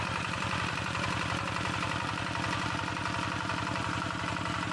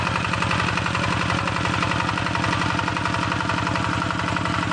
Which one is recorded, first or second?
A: second